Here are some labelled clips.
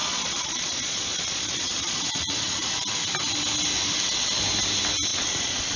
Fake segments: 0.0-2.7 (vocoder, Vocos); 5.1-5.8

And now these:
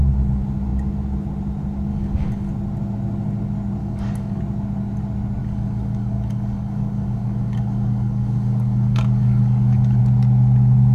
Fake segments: 1.9-2.5 (codec, DAC); 3.8-4.4; 5.4-10.0

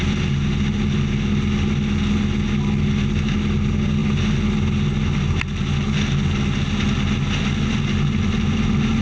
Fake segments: none

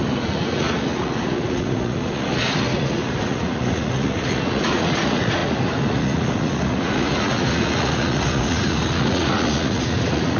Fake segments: 0.0-10.4 (vocoder, Vocos)

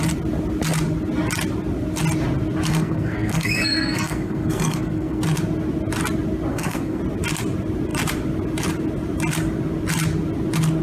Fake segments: 2.7-5.2 (codec, SNAC); 6.5-7.0

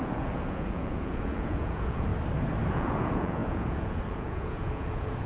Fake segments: 0.0-2.1 (vocoder, Vocos); 2.7-5.3